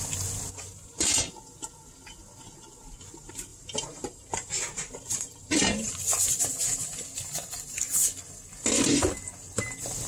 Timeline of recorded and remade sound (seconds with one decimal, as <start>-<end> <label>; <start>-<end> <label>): 0.0-0.7 recorded; 0.7-1.3 remade; 1.3-3.5 recorded; 3.5-5.9 remade; 5.9-10.1 recorded